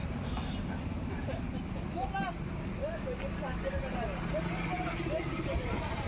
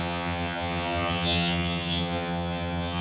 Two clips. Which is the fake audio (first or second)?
second